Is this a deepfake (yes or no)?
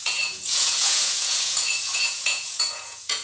yes